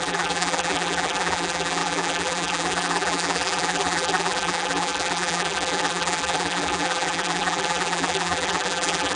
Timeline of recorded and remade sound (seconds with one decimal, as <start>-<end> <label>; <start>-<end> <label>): 0.0-9.2 remade